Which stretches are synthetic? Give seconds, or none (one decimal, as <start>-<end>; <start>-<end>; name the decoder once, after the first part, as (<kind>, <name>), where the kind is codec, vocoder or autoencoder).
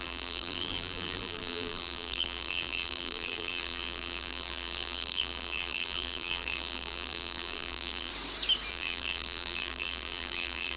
0.0-8.1 (vocoder, BigVGAN v2); 8.7-10.8